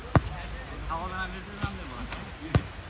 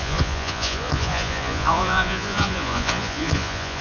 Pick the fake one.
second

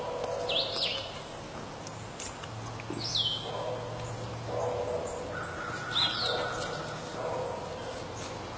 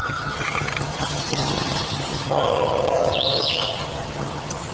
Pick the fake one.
second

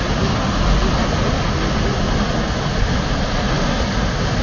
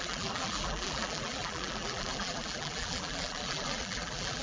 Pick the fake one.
second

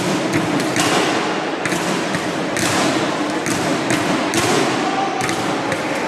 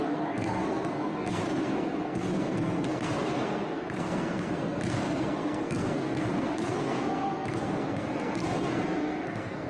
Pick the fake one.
second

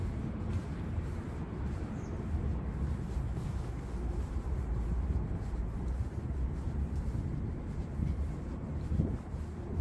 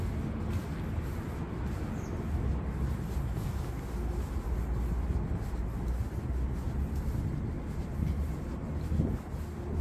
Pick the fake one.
first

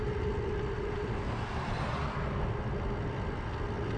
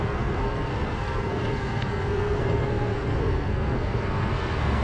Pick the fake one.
second